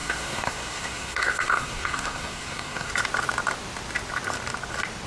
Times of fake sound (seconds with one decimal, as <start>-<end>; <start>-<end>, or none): 0.0-2.9